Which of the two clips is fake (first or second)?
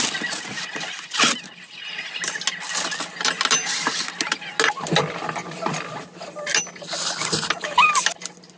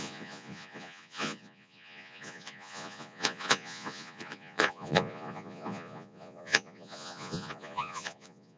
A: second